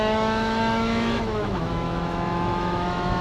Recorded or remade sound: remade